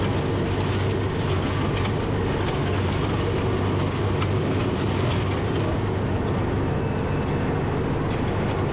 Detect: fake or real real